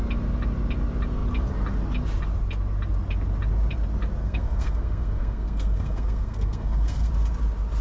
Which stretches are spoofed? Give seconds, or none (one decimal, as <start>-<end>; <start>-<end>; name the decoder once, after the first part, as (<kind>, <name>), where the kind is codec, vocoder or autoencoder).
4.2-7.1 (codec, SNAC)